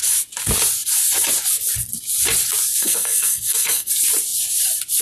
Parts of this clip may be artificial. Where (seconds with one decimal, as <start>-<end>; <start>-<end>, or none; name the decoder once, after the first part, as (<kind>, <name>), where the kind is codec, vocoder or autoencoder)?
2.8-3.9 (codec, SNAC)